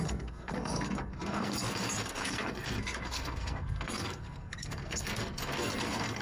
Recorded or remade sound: remade